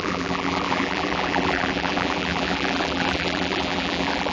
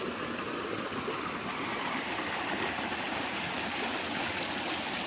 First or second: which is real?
second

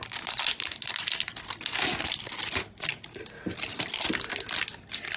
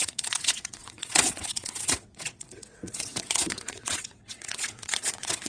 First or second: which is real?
first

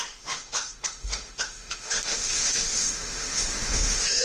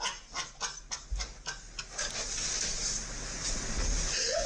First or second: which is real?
second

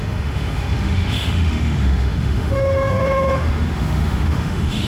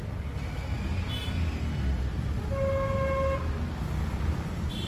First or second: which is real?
second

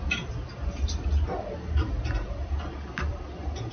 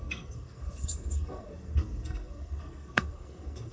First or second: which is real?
first